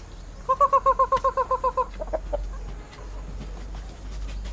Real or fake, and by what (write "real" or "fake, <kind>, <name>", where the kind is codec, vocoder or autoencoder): real